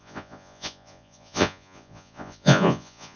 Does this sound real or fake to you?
fake